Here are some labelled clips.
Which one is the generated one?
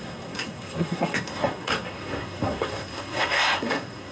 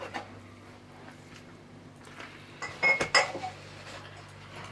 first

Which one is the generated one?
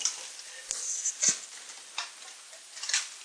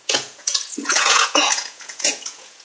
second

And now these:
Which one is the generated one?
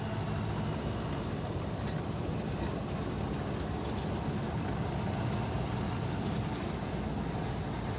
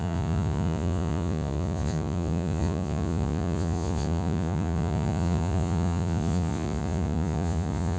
second